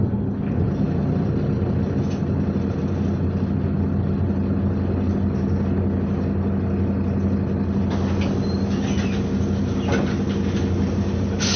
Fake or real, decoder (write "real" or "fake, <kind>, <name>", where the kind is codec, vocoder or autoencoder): real